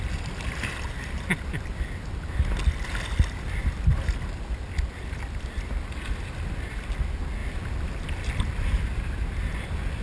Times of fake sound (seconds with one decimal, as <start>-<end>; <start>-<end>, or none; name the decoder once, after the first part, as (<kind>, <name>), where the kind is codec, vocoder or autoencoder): none